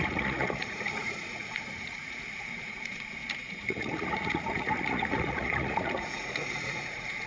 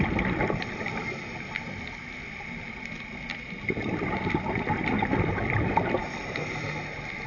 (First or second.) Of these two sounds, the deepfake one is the first